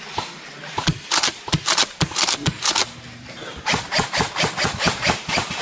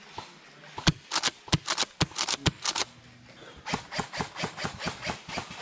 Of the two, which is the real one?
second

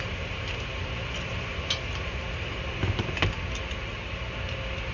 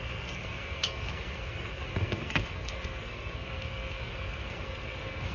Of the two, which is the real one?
first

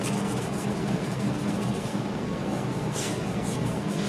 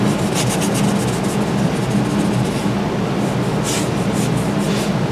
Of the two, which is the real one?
second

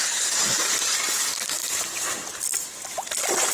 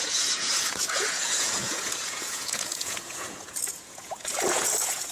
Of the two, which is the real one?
first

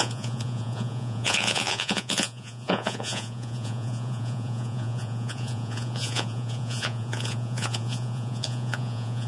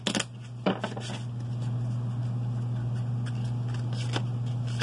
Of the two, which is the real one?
second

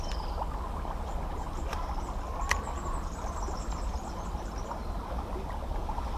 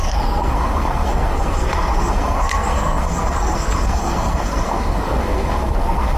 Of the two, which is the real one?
first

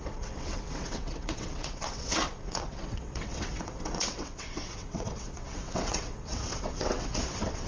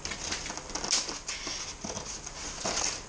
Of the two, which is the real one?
second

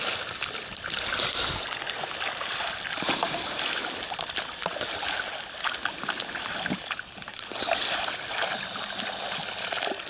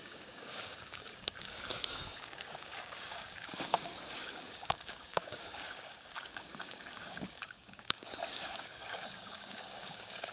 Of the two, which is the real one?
first